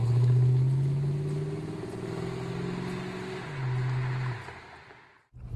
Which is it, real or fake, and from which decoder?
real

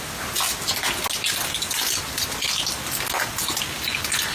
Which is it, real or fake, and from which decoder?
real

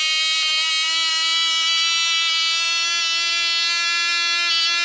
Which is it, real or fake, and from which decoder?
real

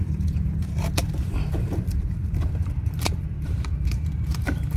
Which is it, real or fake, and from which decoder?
fake, vocoder, BigVGAN v2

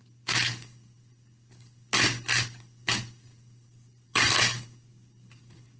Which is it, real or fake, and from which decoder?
real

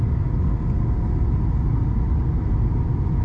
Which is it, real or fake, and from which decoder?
real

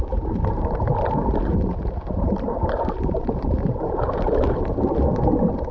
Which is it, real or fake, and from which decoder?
fake, vocoder, BigVGAN v2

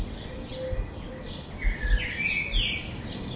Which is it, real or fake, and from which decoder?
real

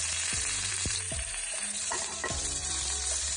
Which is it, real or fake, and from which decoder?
fake, vocoder, BigVGAN v2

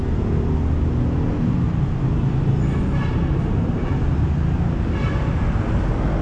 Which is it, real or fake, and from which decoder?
real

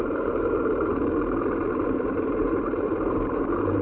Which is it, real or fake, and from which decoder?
fake, vocoder, BigVGAN v2